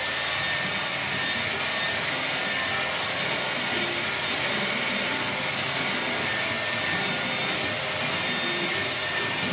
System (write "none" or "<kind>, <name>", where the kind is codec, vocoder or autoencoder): none